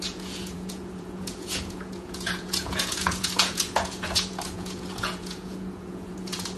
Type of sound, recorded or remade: remade